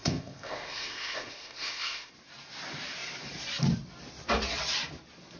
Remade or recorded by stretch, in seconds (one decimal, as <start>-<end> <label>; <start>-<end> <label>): 0.0-2.1 remade; 2.1-5.4 recorded